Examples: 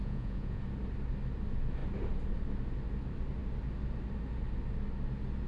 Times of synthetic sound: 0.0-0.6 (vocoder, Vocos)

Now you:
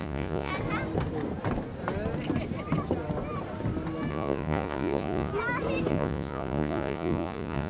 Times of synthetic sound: 0.0-0.5 (vocoder, Vocos); 4.1-5.3; 5.9-7.7

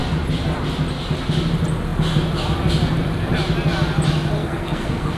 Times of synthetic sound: 4.4-5.2 (codec, SNAC)

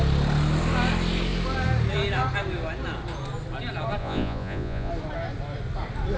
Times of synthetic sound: 4.0-4.9 (vocoder, Vocos)

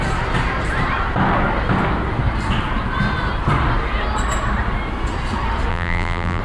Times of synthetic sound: 5.7-6.4 (vocoder, BigVGAN v2)

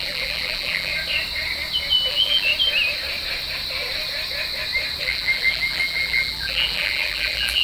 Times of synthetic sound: 0.0-0.9 (vocoder, BigVGAN v2); 2.1-2.5; 5.0-7.6

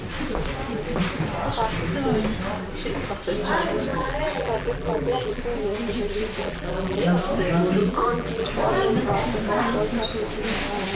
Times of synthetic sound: 3.9-5.4 (vocoder, BigVGAN v2); 6.4-7.0; 7.8-8.5